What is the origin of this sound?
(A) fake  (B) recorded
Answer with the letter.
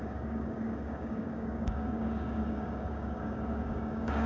A